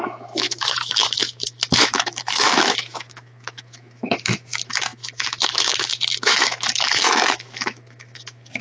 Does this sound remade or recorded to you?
remade